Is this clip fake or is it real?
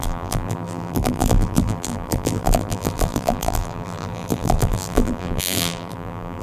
fake